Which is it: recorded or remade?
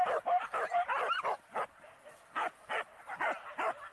recorded